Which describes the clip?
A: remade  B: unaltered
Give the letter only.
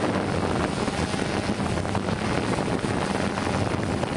B